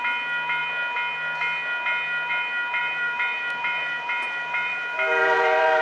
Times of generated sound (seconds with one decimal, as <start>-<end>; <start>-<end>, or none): 2.8-5.8